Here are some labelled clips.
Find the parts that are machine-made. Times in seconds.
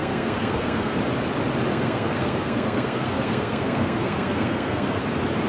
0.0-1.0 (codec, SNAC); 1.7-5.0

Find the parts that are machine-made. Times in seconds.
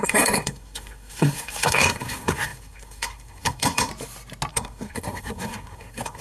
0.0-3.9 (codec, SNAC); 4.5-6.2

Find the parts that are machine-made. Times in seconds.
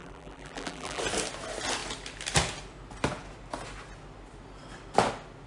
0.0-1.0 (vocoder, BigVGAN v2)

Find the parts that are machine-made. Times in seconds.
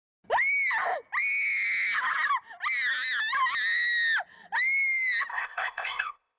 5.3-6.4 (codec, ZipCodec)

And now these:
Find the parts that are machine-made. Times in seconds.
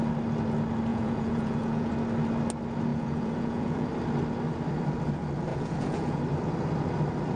0.9-1.9 (vocoder, Vocos); 2.9-3.9; 5.5-6.2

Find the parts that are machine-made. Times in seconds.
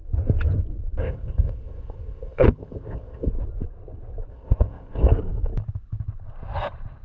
1.0-3.3 (codec, ZipCodec); 4.3-5.1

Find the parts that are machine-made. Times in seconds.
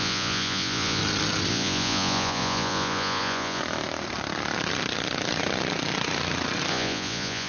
0.0-1.0 (vocoder, Vocos); 1.5-3.6; 6.7-7.5